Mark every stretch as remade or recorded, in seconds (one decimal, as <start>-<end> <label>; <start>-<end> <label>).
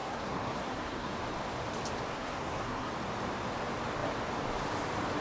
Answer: 0.0-1.1 remade; 1.1-2.1 recorded; 2.1-2.9 remade; 2.9-5.2 recorded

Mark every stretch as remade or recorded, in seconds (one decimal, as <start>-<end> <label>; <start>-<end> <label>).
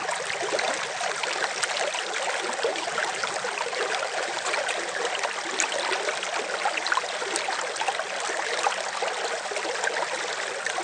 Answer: 0.0-2.7 recorded; 2.7-5.0 remade; 5.0-10.8 recorded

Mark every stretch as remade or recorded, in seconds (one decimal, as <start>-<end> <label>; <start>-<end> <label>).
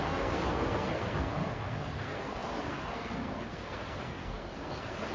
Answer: 0.0-5.1 remade